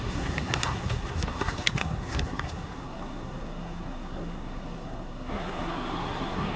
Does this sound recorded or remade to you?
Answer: remade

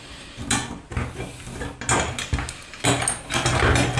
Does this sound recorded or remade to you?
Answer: recorded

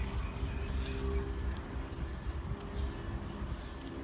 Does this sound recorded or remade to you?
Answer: recorded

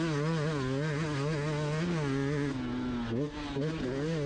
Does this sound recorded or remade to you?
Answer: recorded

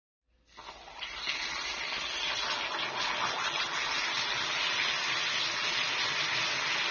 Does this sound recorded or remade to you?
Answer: recorded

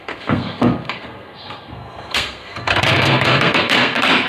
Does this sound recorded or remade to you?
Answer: remade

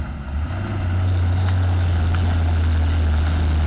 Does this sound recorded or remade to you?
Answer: recorded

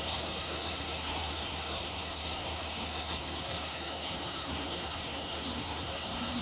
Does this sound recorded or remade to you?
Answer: remade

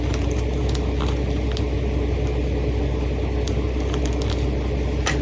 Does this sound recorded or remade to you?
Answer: recorded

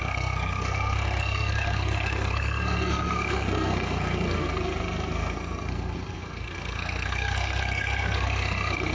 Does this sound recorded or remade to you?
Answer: remade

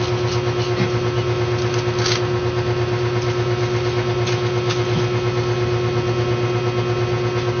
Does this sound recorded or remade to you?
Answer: recorded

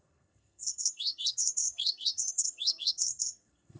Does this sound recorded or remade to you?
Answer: remade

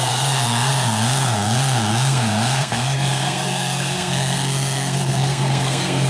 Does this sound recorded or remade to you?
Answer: remade